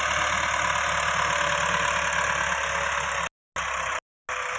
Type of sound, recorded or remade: recorded